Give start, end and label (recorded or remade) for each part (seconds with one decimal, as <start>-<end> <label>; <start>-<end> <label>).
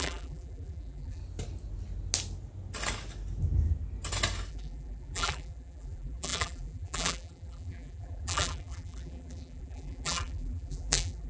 0.0-1.2 remade; 1.2-4.5 recorded; 4.5-11.3 remade